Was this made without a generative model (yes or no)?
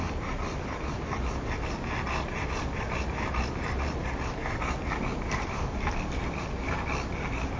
yes